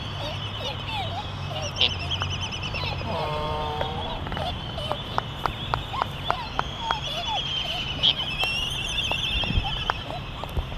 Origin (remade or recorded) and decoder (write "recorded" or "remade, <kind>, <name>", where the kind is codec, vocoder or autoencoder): remade, vocoder, BigVGAN v2